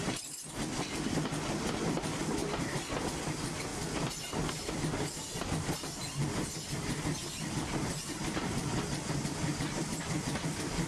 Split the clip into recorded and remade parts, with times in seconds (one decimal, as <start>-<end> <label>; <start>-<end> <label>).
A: 0.0-2.4 recorded; 2.4-3.0 remade; 3.0-10.9 recorded